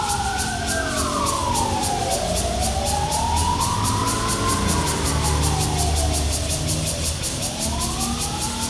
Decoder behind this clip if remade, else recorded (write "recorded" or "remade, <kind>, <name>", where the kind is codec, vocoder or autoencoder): recorded